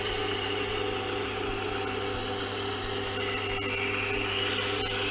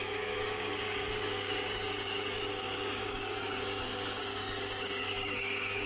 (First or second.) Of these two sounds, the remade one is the second